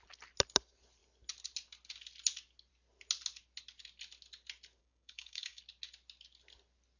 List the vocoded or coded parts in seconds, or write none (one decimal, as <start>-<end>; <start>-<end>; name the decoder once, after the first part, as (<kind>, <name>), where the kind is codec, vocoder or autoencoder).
4.8-5.6 (codec, DAC)

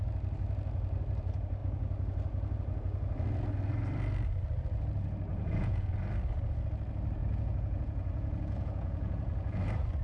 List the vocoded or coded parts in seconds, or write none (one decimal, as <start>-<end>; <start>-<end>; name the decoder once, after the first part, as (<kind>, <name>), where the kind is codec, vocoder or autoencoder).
5.3-5.9 (vocoder, Vocos); 7.2-9.6

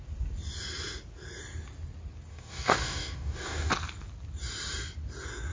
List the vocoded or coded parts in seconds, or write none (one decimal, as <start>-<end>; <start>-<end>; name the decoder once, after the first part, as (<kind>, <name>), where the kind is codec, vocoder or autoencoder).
2.3-3.7 (codec, DAC)

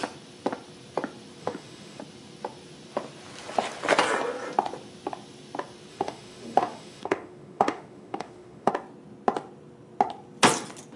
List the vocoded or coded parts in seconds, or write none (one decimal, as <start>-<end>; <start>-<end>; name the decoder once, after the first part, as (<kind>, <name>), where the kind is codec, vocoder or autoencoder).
1.4-2.0 (autoencoder, DAC-VAE); 5.9-8.7

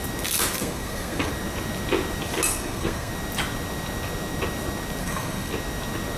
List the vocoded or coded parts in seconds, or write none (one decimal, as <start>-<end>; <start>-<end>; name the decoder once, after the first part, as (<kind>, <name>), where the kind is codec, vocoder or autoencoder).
0.6-1.3 (codec, SNAC); 2.5-3.1; 5.0-5.5